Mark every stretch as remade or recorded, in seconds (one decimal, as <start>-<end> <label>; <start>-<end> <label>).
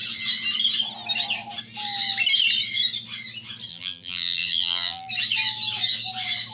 0.0-3.7 recorded; 3.7-5.1 remade; 5.1-6.5 recorded